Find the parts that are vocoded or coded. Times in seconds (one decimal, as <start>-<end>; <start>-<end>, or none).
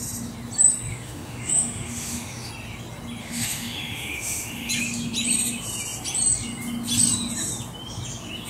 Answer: 0.9-2.5; 3.2-4.7